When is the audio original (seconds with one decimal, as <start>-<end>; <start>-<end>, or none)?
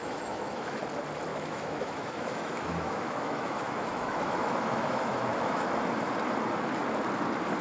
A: 0.8-1.3; 5.9-7.6